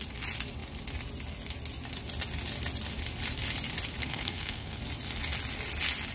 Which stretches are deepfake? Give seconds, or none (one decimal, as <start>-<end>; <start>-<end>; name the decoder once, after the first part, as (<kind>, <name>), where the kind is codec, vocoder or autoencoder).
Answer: 4.0-4.8 (codec, SNAC)